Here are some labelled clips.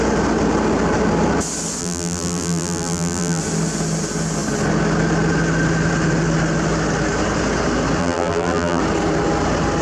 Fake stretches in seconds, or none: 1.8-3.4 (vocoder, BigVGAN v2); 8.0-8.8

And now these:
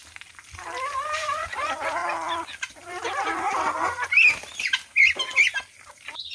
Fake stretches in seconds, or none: 0.0-2.0 (vocoder, BigVGAN v2); 2.7-3.8; 5.7-6.3